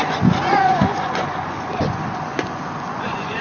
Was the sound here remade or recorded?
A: remade